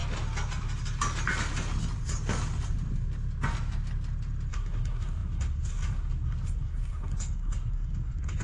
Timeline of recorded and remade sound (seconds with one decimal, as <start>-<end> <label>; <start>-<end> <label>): 0.0-4.5 recorded; 4.5-8.4 remade